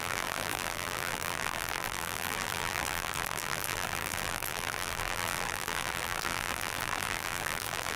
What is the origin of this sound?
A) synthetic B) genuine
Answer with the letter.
A